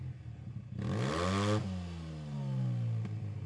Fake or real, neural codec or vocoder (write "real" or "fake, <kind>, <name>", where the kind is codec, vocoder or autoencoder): real